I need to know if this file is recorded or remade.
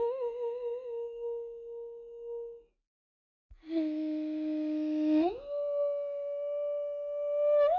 recorded